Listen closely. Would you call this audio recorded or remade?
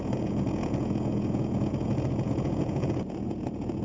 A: remade